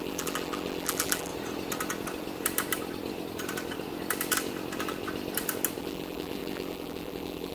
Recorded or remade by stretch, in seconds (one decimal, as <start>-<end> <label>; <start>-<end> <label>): 0.0-1.3 remade; 1.3-5.8 recorded; 5.8-7.5 remade